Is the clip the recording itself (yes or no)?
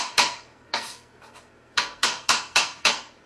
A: no